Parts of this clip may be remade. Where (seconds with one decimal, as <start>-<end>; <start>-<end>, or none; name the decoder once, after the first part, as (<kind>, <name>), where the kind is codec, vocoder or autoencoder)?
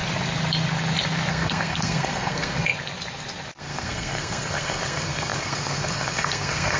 1.3-2.7 (codec, SNAC); 3.6-6.8